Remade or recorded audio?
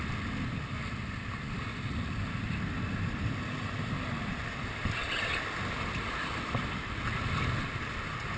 recorded